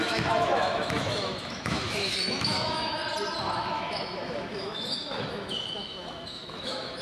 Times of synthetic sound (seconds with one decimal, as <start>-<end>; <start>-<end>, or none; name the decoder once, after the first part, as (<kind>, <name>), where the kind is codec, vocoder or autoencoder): 0.0-3.0 (autoencoder, DAC-VAE); 3.7-7.0